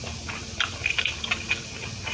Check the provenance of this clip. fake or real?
real